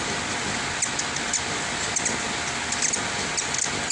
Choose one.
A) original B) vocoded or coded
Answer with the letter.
A